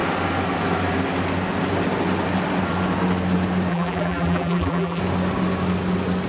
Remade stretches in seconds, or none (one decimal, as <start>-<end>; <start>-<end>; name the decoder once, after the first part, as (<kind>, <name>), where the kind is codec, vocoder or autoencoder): 3.7-5.0 (vocoder, BigVGAN v2)